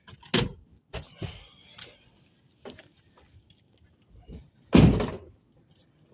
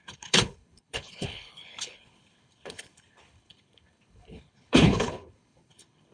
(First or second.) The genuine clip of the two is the first